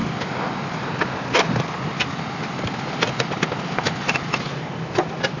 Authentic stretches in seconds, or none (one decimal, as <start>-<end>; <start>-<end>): 0.0-5.4